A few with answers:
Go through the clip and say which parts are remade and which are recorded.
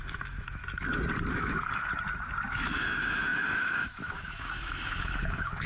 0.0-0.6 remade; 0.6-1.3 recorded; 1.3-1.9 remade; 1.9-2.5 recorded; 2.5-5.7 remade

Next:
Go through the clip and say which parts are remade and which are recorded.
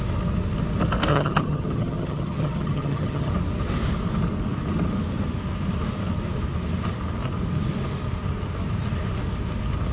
0.0-1.1 recorded; 1.1-3.3 remade; 3.3-9.9 recorded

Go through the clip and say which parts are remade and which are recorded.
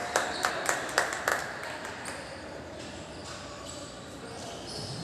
0.0-1.3 recorded; 1.3-2.8 remade; 2.8-5.0 recorded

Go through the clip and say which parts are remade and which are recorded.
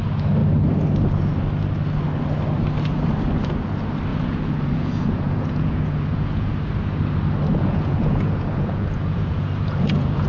0.0-4.1 recorded; 4.1-6.5 remade; 6.5-7.5 recorded; 7.5-10.3 remade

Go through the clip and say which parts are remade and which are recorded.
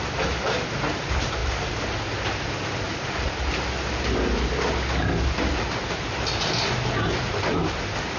0.0-8.2 recorded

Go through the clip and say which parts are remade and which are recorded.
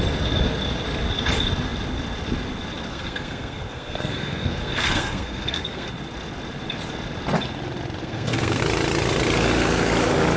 0.0-2.9 recorded; 2.9-5.9 remade; 5.9-8.0 recorded; 8.0-8.6 remade; 8.6-10.4 recorded